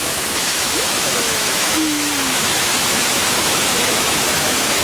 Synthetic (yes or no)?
yes